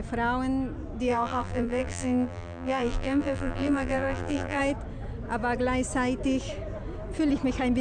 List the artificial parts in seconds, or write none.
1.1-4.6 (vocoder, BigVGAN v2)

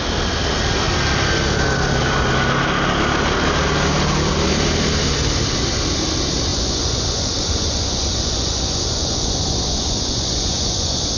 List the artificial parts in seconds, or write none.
6.5-11.2 (vocoder, Vocos)

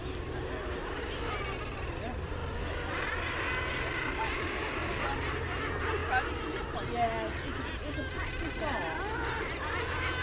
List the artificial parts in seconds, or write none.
none

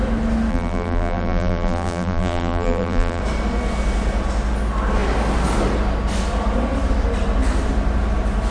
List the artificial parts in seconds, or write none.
0.5-3.2 (vocoder, BigVGAN v2)